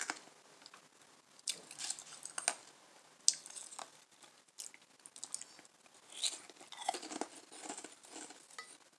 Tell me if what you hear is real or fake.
real